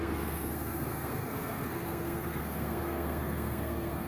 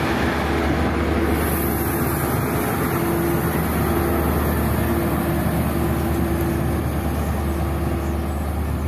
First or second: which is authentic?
second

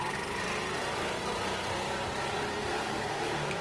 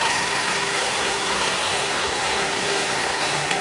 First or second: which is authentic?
first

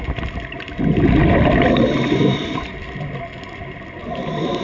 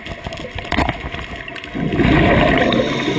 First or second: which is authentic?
second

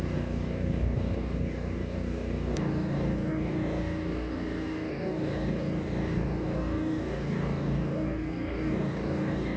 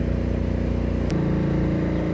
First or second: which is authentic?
second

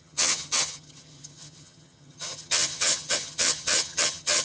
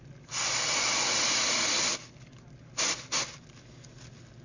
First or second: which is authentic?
second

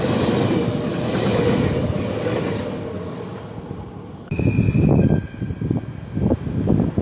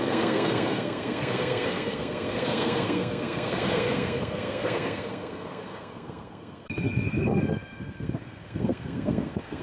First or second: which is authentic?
first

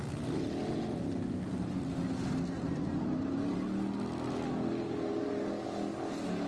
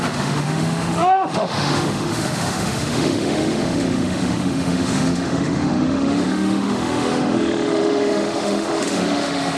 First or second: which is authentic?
first